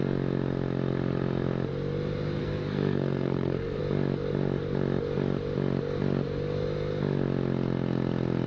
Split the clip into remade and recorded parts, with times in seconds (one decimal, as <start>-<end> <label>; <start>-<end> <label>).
0.0-2.4 recorded; 2.4-3.8 remade; 3.8-8.5 recorded